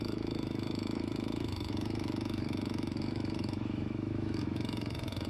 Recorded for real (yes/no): no